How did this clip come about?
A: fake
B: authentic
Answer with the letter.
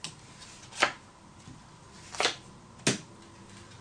B